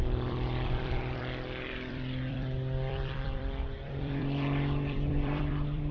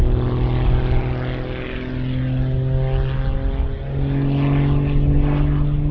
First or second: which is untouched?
second